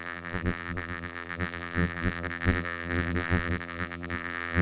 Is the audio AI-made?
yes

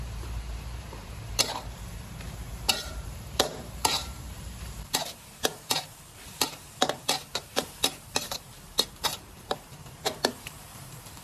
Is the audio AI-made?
yes